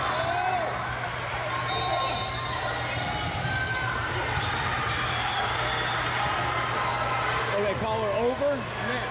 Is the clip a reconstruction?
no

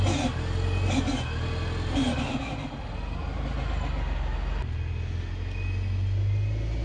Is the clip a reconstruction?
no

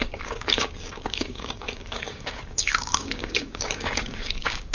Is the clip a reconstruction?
yes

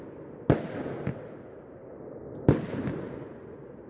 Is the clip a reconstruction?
no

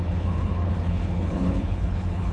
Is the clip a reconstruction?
yes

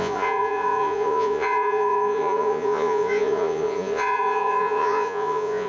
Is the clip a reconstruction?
yes